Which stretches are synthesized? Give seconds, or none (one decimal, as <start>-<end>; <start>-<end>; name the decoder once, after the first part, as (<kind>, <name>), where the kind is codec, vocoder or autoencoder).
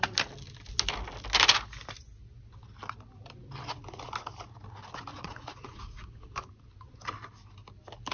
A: 5.1-6.2 (vocoder, Vocos)